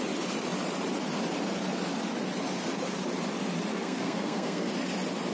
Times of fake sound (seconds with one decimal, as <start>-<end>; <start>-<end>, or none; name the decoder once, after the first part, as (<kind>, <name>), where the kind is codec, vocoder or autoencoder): 3.7-4.7 (codec, SNAC)

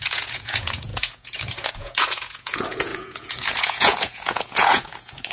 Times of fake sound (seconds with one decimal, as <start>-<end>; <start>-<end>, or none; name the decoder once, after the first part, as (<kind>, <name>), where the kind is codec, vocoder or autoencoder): 0.0-5.3 (vocoder, Vocos)

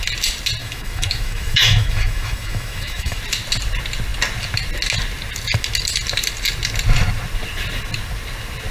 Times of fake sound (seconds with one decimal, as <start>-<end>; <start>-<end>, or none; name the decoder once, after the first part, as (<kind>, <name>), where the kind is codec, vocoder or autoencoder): 0.6-3.2 (autoencoder, DAC-VAE)

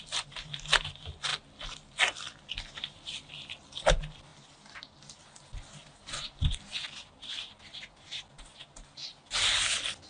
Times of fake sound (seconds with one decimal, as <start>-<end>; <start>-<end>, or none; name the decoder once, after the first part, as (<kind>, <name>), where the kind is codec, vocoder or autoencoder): none